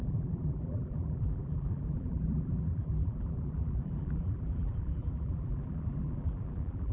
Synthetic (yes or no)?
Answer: yes